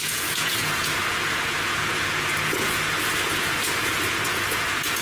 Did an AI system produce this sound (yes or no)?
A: yes